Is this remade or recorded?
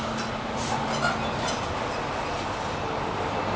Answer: recorded